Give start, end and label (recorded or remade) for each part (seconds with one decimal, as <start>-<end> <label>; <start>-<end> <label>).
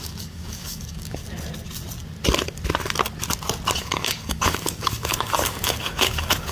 0.0-1.2 remade; 1.2-3.8 recorded; 3.8-6.5 remade